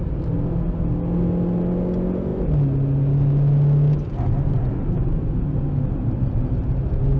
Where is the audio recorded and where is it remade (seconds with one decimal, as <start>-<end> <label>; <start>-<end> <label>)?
0.0-7.2 recorded